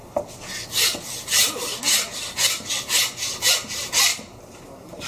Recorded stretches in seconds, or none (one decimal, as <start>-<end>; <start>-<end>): 0.0-4.1